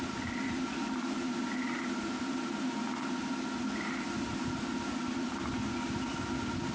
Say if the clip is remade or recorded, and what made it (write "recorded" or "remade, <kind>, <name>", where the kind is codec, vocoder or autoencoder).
recorded